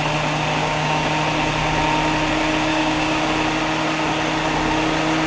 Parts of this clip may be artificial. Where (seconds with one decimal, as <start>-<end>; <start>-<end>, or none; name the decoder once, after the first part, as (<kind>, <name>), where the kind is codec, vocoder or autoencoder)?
0.6-1.1 (codec, DAC); 2.7-3.2

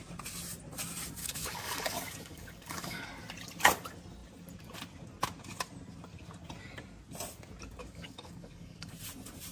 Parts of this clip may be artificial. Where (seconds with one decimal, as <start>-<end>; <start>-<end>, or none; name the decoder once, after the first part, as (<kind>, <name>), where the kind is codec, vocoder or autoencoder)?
1.2-3.1 (codec, DAC); 7.8-8.9

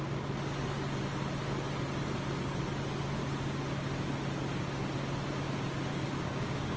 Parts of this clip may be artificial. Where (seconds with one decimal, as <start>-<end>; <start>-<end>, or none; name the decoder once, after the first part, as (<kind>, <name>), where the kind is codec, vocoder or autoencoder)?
5.9-6.8 (codec, DAC)

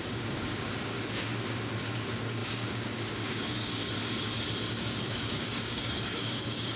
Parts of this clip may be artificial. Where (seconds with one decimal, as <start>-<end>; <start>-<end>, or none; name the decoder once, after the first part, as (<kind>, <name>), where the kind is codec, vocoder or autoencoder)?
0.0-3.8 (codec, DAC); 4.7-6.8